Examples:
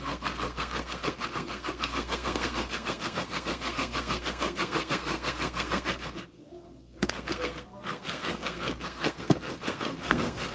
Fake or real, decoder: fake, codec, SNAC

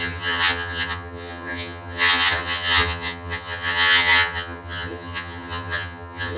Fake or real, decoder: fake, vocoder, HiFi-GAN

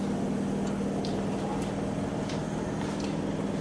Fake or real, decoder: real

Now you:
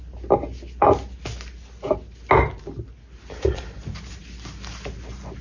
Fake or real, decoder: real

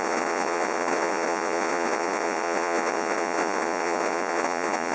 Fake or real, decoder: fake, vocoder, Vocos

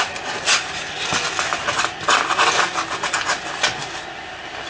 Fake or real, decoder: real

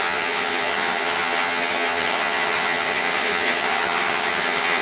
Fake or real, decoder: fake, vocoder, HiFi-GAN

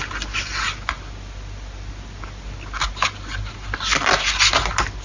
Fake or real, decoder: real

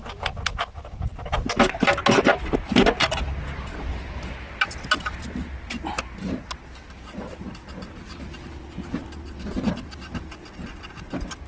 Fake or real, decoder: real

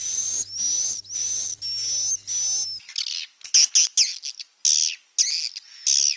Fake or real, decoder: real